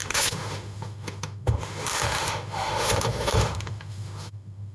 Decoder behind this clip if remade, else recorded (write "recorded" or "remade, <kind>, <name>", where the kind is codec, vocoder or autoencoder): remade, autoencoder, DAC-VAE